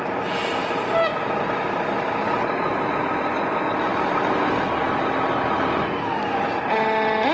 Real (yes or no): yes